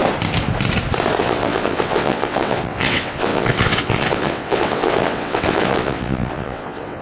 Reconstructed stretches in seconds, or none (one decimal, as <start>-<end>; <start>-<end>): 1.2-7.0